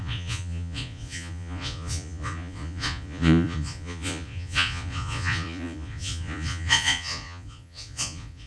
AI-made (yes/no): yes